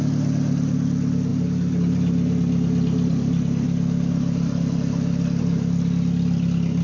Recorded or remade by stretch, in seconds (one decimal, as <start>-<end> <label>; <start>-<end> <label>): 0.0-6.8 recorded